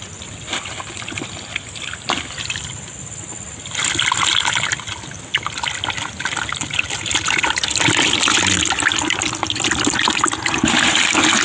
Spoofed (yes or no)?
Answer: no